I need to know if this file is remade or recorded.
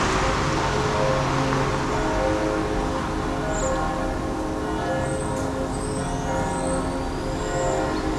recorded